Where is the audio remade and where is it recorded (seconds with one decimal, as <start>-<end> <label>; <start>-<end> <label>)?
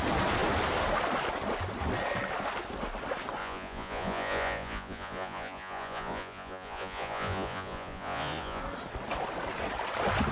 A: 0.0-3.4 recorded; 3.4-8.6 remade; 8.6-10.3 recorded